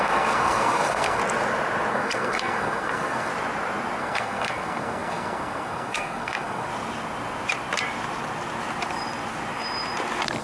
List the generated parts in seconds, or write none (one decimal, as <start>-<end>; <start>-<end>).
0.0-1.2; 1.9-3.3; 4.0-6.7